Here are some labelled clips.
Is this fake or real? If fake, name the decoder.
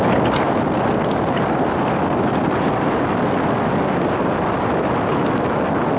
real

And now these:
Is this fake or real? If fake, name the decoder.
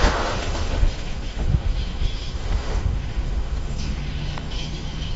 fake, autoencoder, DAC-VAE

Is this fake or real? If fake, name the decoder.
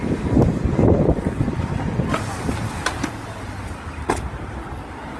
real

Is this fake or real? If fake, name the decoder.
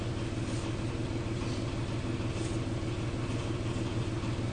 real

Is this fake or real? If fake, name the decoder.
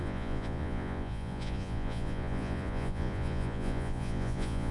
fake, vocoder, Vocos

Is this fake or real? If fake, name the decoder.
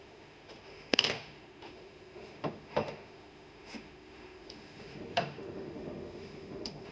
fake, autoencoder, DAC-VAE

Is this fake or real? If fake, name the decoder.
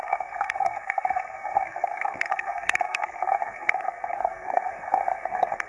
fake, codec, SNAC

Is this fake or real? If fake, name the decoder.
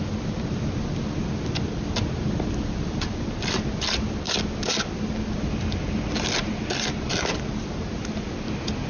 real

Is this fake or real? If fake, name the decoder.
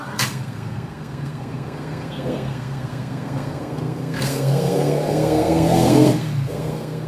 fake, codec, SNAC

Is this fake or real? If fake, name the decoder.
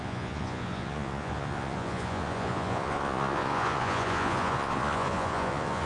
fake, vocoder, Vocos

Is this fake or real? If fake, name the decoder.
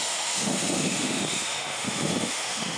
fake, autoencoder, DAC-VAE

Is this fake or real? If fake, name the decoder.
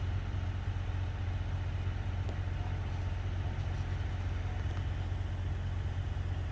real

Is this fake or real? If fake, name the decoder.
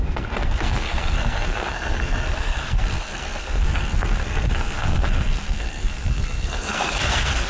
fake, codec, SNAC